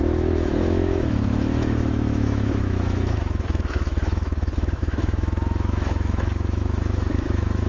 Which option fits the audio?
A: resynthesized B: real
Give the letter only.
A